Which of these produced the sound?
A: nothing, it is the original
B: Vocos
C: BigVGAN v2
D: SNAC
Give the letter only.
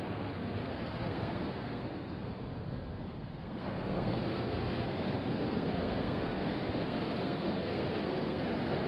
D